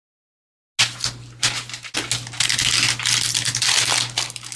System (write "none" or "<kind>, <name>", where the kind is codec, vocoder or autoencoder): none